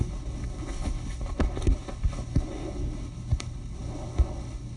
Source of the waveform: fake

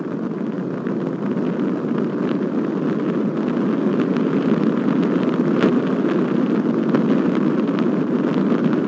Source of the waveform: real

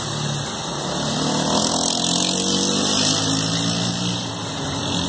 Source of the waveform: real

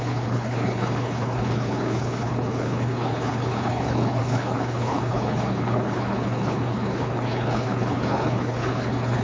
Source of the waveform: fake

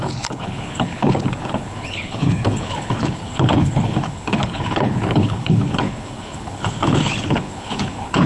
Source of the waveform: fake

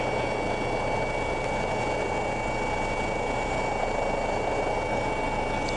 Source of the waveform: real